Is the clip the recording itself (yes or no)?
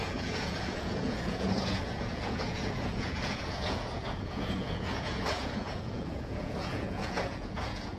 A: no